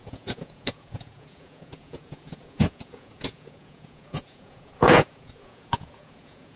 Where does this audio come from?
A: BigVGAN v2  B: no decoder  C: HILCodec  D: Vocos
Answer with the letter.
D